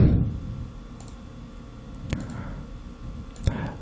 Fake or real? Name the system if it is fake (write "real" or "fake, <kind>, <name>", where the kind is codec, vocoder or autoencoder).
real